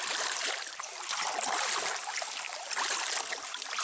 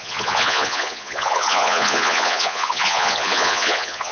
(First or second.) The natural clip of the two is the first